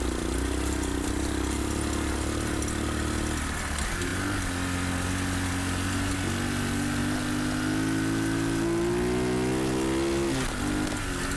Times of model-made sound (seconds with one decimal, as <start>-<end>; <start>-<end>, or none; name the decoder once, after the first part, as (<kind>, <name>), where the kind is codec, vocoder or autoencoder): none

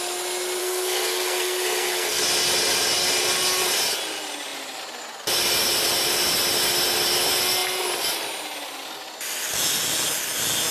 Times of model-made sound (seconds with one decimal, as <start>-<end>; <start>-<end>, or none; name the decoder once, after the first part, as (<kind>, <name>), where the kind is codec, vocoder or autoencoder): 0.6-2.2 (codec, SNAC)

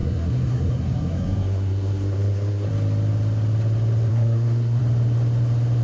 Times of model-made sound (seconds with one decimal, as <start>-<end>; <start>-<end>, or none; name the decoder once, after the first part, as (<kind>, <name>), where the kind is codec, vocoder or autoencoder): 0.0-2.7 (codec, SNAC); 4.1-4.8

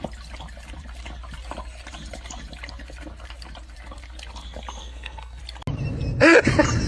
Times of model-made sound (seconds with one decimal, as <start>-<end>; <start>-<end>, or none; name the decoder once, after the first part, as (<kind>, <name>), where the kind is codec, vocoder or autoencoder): 4.8-5.4 (codec, SNAC)

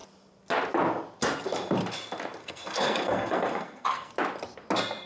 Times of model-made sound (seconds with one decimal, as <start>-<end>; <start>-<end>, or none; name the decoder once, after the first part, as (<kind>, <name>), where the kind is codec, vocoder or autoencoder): 2.4-4.1 (codec, SNAC)